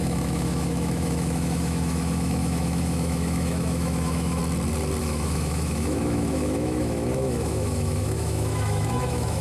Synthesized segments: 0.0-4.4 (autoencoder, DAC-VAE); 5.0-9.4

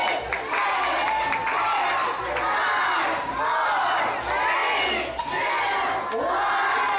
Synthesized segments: none

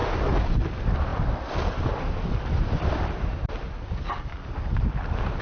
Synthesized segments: none

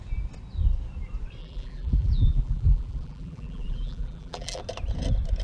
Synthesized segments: 1.4-4.6 (vocoder, BigVGAN v2)

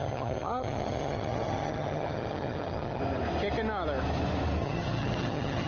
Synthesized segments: 0.0-3.0 (vocoder, HiFi-GAN); 4.6-5.7

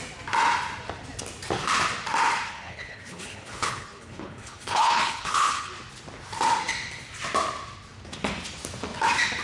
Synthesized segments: 2.5-5.7 (codec, HILCodec)

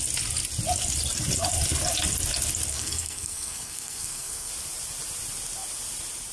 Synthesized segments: 2.7-4.5 (codec, SNAC)